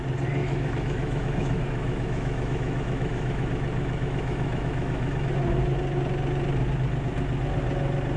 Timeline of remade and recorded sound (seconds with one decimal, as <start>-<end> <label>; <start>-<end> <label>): 0.0-0.4 recorded; 0.4-5.3 remade; 5.3-8.2 recorded